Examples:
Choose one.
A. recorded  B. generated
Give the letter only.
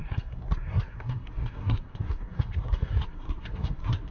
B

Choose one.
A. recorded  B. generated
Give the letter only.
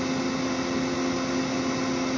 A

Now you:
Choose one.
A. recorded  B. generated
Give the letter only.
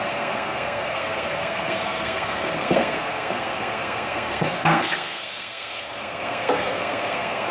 B